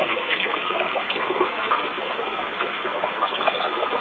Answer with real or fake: fake